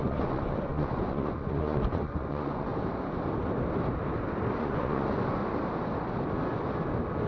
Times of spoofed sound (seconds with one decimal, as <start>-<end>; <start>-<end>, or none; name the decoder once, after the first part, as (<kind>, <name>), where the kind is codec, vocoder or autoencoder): 0.0-2.7 (vocoder, Vocos); 4.6-5.4